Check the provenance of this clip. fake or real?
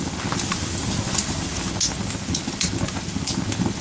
real